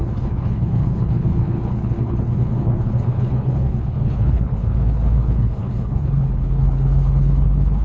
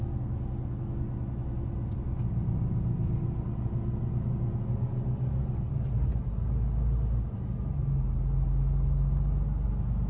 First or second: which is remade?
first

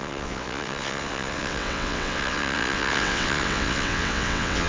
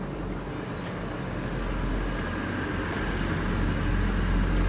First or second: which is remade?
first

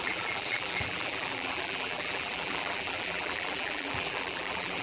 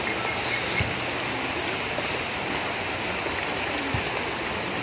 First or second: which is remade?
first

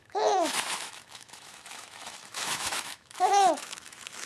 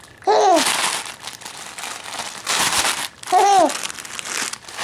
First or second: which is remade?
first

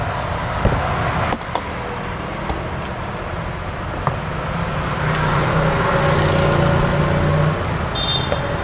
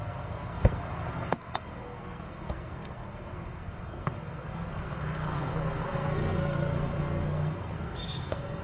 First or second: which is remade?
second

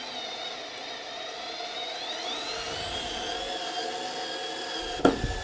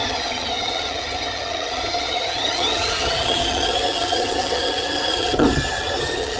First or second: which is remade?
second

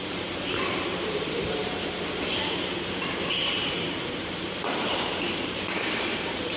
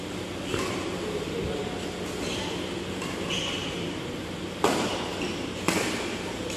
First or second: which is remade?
first